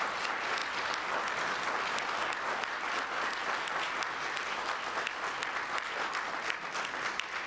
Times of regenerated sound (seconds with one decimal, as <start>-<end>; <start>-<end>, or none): none